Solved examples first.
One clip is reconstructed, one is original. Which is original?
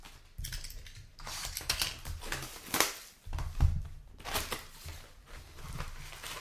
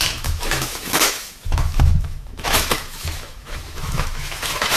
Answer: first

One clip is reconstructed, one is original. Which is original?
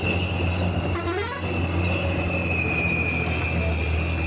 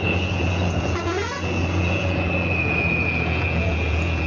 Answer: first